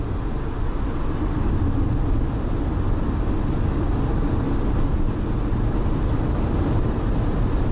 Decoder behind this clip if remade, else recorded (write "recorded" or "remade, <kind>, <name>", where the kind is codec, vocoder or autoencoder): recorded